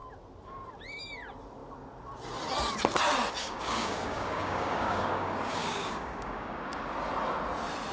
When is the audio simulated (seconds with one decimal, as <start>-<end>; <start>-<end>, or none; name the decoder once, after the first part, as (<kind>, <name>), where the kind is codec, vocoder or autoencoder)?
3.4-6.8 (codec, DAC)